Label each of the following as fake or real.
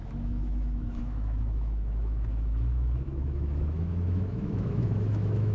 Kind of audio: fake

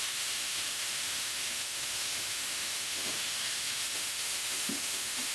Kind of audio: fake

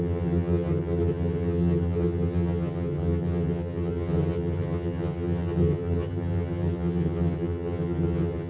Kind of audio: fake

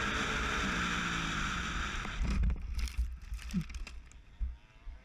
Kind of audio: real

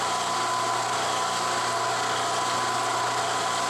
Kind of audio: real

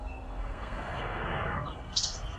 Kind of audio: fake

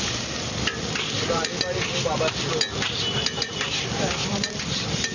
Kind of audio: fake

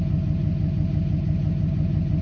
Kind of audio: real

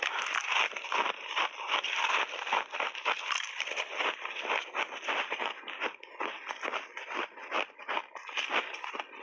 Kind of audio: real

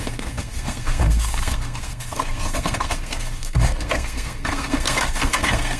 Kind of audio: fake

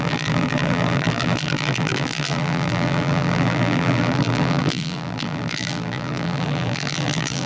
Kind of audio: fake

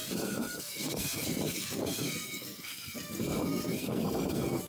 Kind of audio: fake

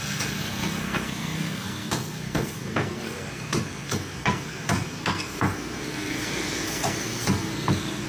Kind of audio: fake